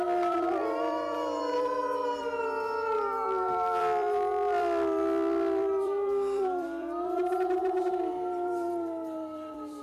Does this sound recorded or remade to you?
remade